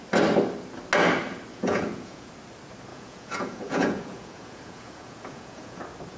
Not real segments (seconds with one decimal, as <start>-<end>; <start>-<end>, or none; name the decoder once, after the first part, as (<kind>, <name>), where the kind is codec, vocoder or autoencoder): 1.5-2.3 (vocoder, Vocos); 2.9-5.8